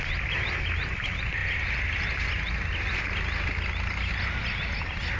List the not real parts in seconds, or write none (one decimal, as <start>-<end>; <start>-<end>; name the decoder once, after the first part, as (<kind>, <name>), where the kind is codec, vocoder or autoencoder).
none